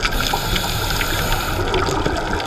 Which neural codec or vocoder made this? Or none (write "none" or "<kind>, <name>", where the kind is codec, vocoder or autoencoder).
none